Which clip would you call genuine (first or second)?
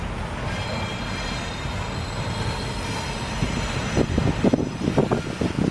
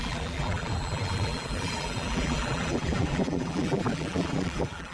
first